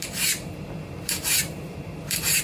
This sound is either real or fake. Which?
fake